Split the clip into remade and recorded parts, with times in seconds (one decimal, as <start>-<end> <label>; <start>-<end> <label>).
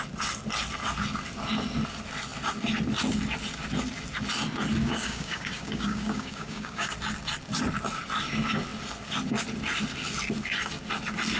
0.0-4.8 recorded; 4.8-6.9 remade; 6.9-11.4 recorded